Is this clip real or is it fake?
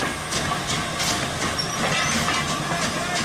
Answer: real